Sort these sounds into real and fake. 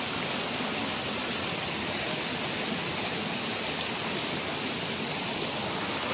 real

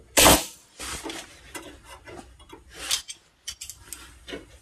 real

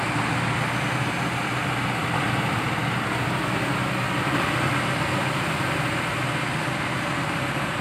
real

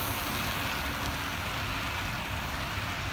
real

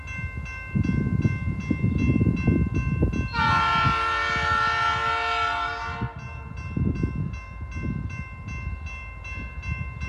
real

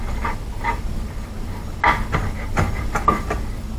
real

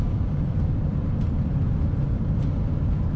real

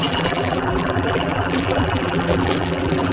fake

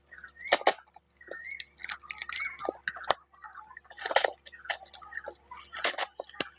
real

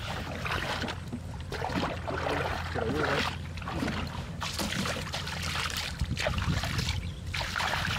real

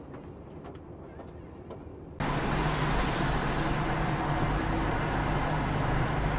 real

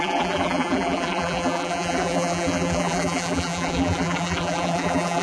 fake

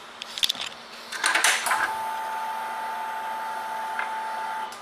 real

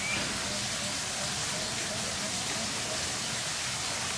real